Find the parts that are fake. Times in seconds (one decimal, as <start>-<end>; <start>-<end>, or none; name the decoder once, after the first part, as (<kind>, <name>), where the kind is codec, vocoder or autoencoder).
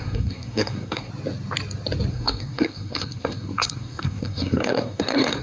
0.0-1.1 (codec, SNAC); 2.1-5.4